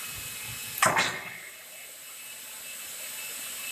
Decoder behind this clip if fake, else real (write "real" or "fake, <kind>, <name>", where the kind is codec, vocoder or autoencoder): real